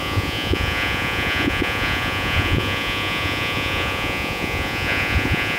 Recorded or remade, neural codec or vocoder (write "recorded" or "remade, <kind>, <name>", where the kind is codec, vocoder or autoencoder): remade, vocoder, Vocos